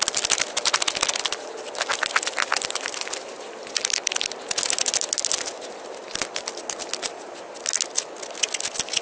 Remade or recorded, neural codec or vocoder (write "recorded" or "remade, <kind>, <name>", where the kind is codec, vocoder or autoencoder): recorded